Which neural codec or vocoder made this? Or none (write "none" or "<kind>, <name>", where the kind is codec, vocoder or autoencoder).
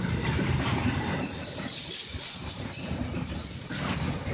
none